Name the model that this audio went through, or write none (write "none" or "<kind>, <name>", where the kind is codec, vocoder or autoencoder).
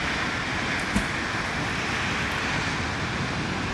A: none